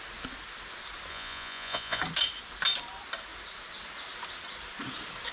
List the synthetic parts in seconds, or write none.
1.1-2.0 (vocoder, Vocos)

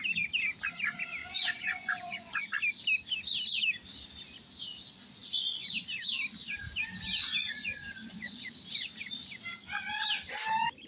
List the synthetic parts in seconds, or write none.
1.2-2.4 (vocoder, Vocos); 5.2-5.8; 7.4-8.5

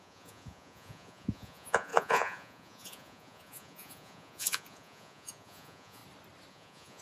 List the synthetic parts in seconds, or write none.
0.0-6.0 (vocoder, Vocos); 6.5-7.0